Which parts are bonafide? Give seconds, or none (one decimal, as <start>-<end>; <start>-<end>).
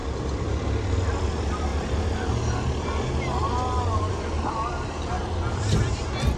1.7-5.5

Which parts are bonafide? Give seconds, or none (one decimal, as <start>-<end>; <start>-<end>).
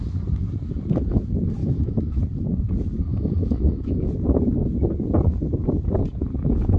0.0-1.6; 2.2-3.1; 4.1-6.8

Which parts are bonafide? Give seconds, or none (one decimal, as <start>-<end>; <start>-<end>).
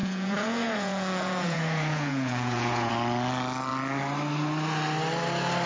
2.9-5.7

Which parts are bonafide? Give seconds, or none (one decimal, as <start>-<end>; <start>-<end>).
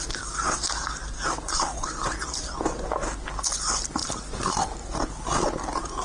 0.0-6.0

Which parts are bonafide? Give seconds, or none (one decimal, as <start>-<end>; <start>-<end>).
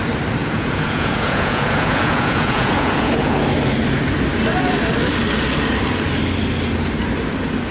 0.0-0.4; 3.4-7.7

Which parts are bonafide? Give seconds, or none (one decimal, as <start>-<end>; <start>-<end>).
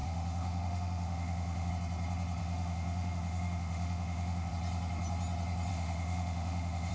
1.7-2.4; 4.5-5.7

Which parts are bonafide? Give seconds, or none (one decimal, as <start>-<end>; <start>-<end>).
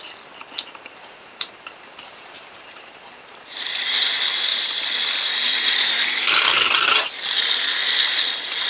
0.0-1.0; 4.0-4.5; 6.2-8.7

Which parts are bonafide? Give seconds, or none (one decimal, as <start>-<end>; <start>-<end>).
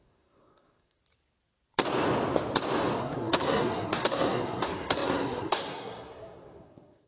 1.0-3.0